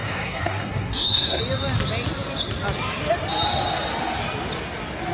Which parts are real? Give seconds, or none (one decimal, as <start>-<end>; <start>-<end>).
1.4-5.1